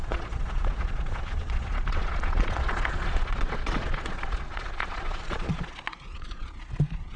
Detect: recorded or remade remade